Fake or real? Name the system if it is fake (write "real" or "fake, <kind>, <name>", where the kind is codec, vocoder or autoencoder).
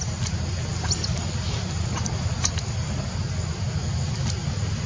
real